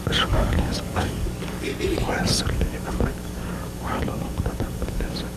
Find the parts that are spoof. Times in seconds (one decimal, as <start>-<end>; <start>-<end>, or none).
0.0-1.7; 2.4-5.4